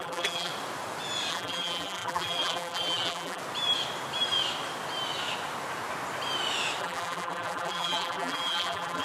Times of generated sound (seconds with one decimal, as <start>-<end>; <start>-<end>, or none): 0.0-0.5; 1.3-3.4; 6.8-9.0